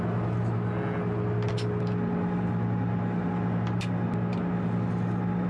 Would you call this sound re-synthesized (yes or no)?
no